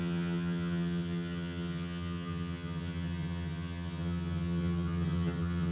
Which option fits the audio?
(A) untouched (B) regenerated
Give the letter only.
B